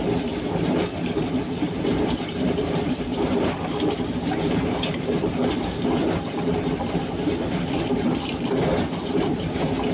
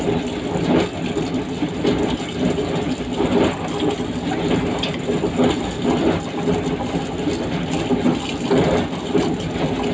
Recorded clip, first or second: second